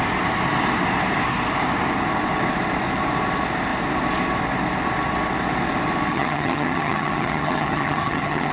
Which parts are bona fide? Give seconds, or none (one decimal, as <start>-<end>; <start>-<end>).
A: 0.0-6.1